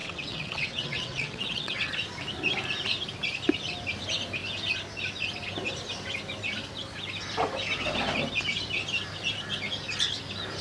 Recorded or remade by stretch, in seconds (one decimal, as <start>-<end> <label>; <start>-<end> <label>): 0.0-1.9 remade; 1.9-10.6 recorded